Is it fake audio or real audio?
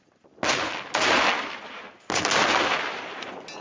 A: real